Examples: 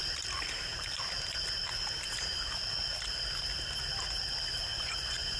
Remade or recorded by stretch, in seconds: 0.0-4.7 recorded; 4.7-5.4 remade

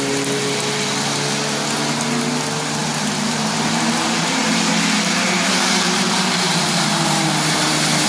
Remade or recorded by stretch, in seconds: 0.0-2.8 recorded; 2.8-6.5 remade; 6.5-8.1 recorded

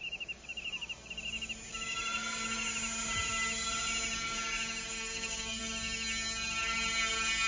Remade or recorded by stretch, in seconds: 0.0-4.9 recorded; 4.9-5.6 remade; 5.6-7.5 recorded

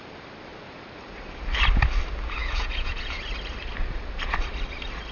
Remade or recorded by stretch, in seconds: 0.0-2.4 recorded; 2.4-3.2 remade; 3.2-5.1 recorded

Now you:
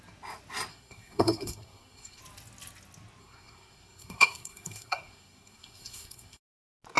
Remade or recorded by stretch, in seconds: 0.0-0.7 recorded; 0.7-2.2 remade; 2.2-3.2 recorded; 3.2-6.4 remade; 6.4-7.0 recorded

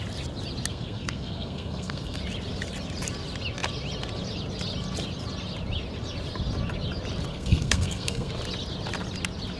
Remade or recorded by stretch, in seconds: 0.0-0.7 recorded; 0.7-2.2 remade; 2.2-7.3 recorded; 7.3-8.3 remade; 8.3-9.6 recorded

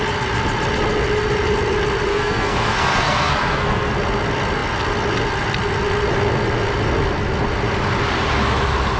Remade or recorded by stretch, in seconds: 0.0-2.1 recorded; 2.1-3.9 remade; 3.9-9.0 recorded

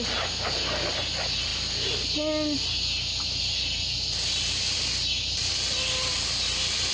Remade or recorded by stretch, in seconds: 0.0-6.9 recorded